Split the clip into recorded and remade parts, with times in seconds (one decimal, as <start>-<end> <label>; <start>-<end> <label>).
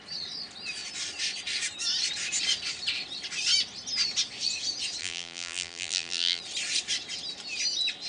0.0-5.0 recorded; 5.0-6.4 remade; 6.4-8.1 recorded